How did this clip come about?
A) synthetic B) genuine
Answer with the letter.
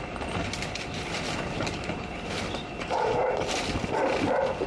B